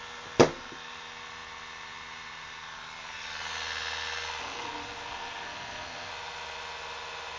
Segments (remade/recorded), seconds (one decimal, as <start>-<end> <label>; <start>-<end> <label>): 0.0-4.4 recorded; 4.4-6.1 remade; 6.1-7.4 recorded